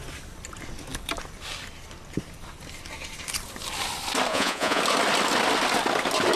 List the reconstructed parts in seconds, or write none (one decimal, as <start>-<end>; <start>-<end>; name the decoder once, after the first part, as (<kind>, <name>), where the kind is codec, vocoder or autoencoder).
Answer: 4.3-4.8 (vocoder, Vocos)

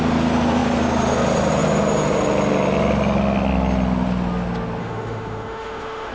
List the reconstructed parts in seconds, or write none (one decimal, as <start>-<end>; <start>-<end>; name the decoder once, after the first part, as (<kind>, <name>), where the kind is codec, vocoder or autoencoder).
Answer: 4.8-6.1 (autoencoder, DAC-VAE)